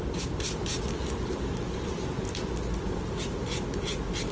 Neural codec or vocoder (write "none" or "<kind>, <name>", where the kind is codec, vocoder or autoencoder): none